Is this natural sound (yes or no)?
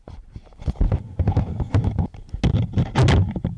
yes